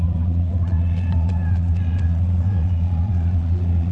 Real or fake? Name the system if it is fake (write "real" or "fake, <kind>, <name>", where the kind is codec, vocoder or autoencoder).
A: fake, vocoder, Vocos